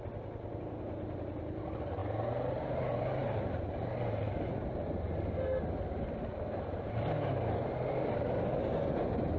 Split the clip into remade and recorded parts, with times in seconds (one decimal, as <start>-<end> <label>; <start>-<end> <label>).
0.0-9.4 recorded